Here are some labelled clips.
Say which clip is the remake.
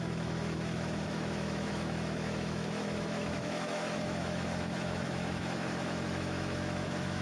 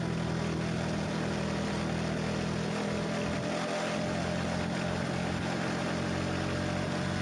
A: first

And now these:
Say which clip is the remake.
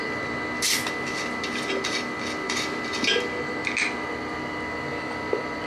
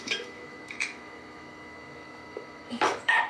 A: second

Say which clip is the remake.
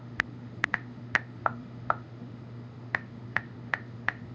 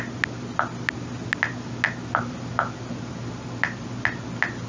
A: first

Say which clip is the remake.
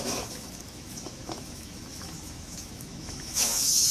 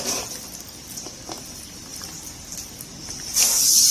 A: first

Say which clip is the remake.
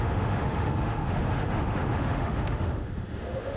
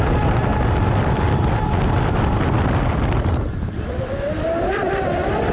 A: first